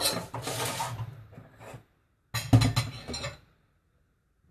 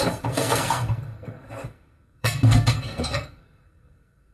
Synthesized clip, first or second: second